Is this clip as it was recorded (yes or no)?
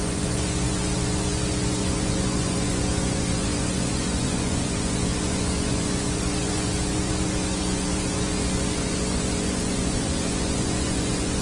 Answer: no